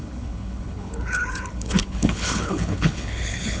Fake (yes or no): yes